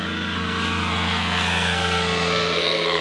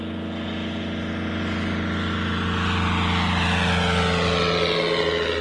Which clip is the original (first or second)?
second